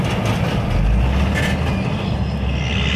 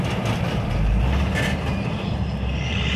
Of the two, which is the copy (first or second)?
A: second